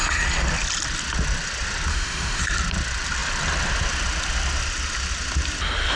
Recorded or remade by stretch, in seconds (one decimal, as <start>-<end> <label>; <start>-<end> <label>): 0.0-1.9 recorded; 1.9-2.4 remade; 2.4-6.0 recorded